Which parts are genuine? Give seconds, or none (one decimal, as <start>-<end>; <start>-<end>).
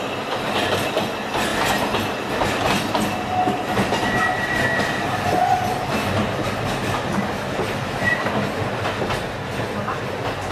0.0-10.5